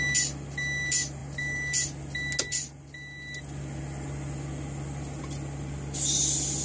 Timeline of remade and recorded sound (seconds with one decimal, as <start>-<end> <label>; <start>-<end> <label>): 0.0-6.6 recorded